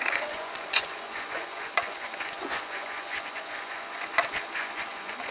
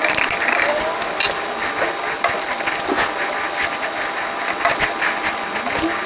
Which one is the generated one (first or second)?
first